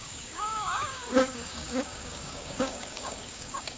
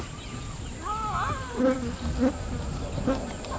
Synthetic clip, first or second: first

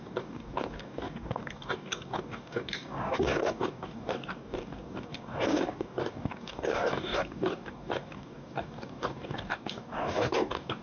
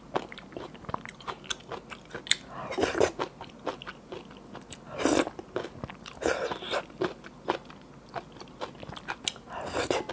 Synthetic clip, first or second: first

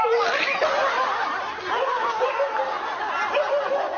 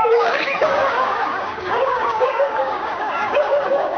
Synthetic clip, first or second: second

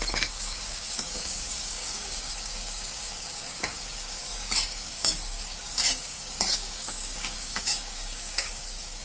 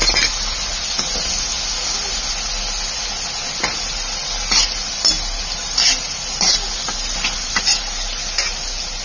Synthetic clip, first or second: first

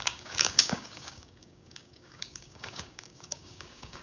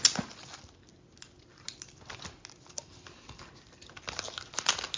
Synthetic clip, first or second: first